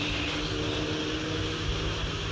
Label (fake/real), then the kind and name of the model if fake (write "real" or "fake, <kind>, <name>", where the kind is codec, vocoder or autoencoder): real